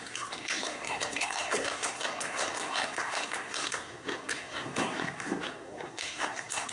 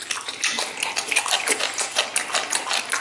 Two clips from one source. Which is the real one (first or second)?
second